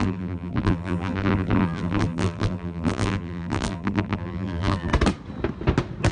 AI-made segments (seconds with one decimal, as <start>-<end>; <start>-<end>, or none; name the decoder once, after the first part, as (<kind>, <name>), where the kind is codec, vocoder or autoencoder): 0.0-4.9 (vocoder, BigVGAN v2)